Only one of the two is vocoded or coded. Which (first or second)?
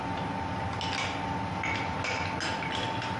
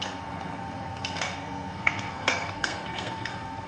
second